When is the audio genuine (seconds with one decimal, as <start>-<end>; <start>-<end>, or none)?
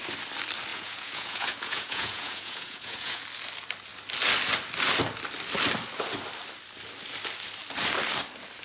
0.0-0.7; 3.2-8.6